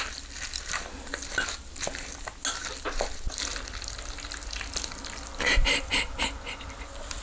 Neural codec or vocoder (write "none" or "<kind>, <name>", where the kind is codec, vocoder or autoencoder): none